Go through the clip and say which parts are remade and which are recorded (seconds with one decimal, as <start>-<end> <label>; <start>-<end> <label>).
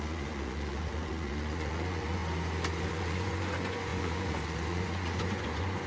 0.0-2.2 remade; 2.2-2.9 recorded; 2.9-5.9 remade